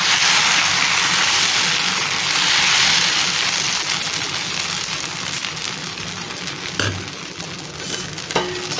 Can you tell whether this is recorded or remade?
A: recorded